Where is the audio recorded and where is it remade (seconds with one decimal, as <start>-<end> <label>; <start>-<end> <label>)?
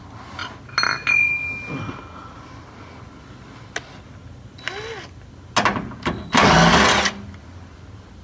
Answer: 0.0-8.2 recorded